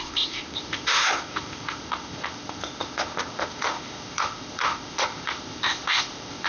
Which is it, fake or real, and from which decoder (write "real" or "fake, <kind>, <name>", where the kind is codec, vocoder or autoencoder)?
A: fake, codec, ZipCodec